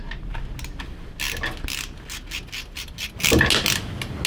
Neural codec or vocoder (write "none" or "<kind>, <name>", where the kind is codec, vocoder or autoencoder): none